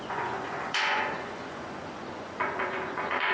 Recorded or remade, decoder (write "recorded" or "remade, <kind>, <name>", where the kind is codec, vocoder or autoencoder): remade, vocoder, Vocos